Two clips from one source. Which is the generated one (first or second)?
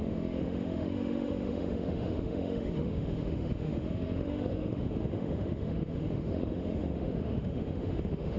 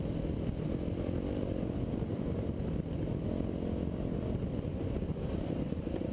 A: first